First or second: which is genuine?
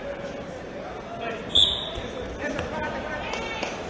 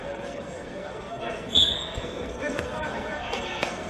first